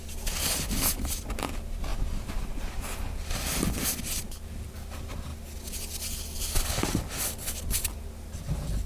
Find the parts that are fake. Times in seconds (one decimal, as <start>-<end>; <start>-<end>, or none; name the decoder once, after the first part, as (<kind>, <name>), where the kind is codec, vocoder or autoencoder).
none